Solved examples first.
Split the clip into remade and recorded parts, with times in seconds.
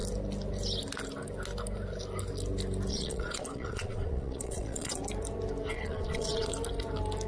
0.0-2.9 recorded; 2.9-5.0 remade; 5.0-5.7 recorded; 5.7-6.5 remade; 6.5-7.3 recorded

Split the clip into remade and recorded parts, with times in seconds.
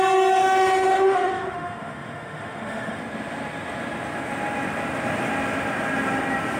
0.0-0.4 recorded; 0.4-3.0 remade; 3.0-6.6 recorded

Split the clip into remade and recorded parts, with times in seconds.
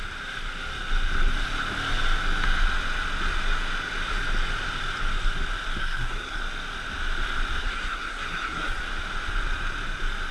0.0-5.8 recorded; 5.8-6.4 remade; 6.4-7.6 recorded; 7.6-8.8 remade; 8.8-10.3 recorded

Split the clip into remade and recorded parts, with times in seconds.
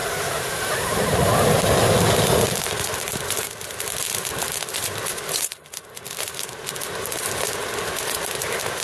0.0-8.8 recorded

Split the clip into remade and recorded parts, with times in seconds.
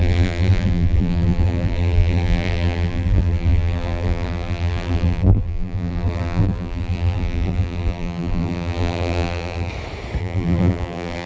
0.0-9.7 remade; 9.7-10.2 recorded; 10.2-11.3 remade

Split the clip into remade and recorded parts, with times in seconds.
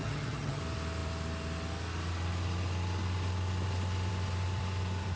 0.0-0.6 remade; 0.6-5.2 recorded